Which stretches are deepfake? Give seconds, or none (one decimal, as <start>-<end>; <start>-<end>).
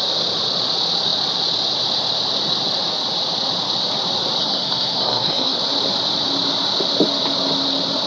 4.4-5.6